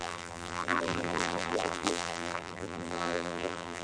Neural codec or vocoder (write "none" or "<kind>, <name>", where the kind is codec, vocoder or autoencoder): vocoder, BigVGAN v2